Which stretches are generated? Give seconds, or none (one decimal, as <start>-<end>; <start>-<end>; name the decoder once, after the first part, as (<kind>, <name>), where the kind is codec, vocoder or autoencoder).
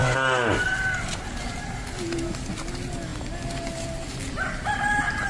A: none